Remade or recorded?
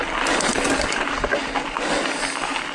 recorded